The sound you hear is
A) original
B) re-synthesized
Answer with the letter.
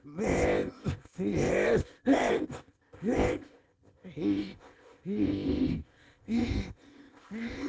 B